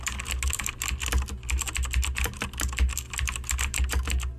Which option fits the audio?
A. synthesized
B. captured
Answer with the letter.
B